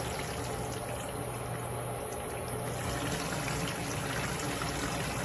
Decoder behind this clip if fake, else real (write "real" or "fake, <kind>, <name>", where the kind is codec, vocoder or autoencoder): real